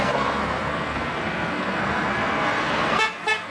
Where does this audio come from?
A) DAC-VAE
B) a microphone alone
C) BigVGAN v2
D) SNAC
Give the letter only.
D